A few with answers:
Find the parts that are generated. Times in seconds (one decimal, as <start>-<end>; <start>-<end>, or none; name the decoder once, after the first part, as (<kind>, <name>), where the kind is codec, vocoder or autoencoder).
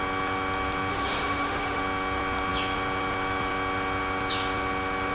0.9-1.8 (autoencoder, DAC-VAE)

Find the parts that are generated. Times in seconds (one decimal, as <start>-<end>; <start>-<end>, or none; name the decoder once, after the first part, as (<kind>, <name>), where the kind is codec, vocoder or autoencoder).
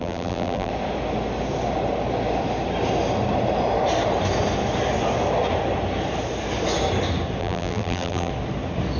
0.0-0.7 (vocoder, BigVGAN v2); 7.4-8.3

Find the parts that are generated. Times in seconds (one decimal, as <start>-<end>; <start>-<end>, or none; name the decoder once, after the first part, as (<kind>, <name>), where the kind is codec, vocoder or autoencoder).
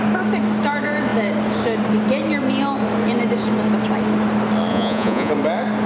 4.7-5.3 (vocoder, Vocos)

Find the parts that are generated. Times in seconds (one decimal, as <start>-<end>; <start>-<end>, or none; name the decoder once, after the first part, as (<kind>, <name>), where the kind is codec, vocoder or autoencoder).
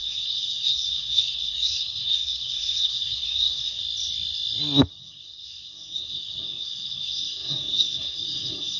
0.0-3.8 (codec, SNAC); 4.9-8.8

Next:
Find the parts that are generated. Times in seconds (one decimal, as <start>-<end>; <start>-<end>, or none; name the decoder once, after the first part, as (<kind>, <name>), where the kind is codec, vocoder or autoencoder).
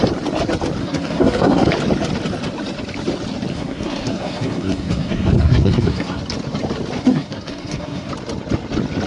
0.8-1.7 (codec, SNAC); 3.5-6.2; 7.0-8.1